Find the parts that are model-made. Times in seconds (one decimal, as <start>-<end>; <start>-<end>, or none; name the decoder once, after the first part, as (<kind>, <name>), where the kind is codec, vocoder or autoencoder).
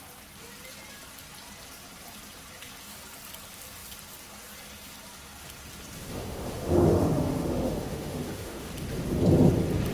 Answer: 6.0-8.7 (autoencoder, DAC-VAE)